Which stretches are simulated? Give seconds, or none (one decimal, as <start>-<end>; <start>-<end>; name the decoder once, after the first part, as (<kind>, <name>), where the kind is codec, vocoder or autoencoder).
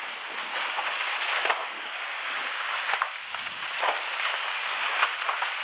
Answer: 0.5-1.1 (codec, DAC); 1.6-5.0